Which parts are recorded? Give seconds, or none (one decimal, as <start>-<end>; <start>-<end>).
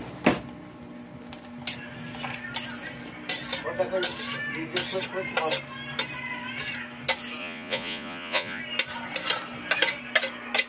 0.0-7.4; 8.6-10.7